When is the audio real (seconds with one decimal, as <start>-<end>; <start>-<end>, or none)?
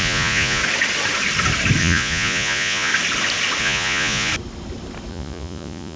0.6-1.8; 2.9-3.6; 4.3-5.1